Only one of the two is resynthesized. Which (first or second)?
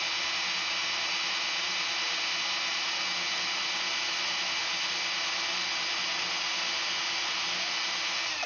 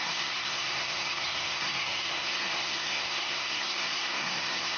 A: second